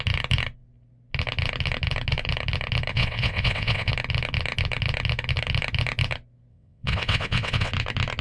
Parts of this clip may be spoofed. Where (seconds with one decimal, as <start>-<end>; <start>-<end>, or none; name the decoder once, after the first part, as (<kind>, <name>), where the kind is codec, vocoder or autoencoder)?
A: 2.9-3.9 (vocoder, WaveNeXt); 6.5-7.7